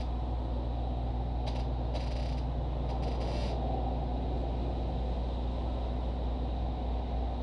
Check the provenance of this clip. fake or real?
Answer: real